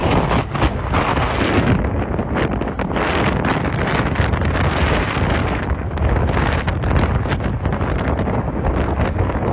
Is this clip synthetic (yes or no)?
no